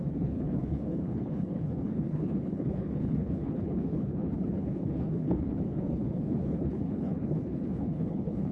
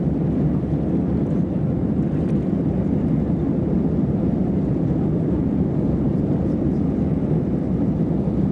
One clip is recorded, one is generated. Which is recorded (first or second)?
second